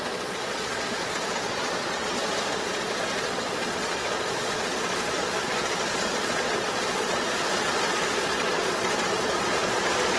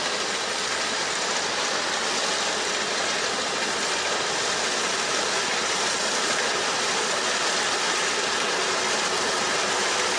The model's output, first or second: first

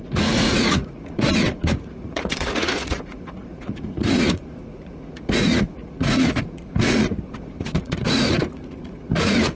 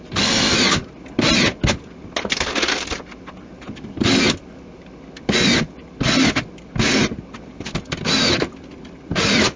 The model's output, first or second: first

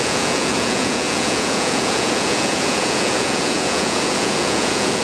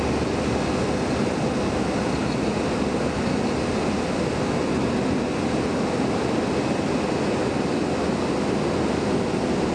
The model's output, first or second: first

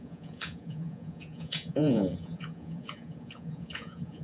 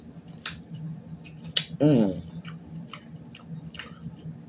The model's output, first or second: first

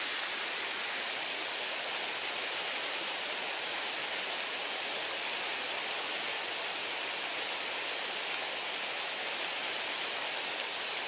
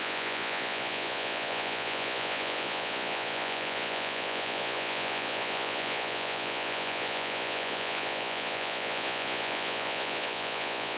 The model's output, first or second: second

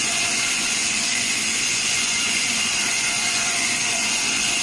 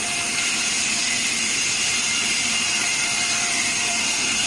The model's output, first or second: first